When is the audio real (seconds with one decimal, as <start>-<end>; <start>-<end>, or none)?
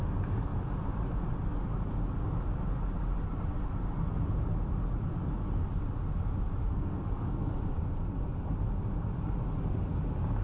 0.0-6.7; 7.5-10.4